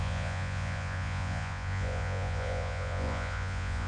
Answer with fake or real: fake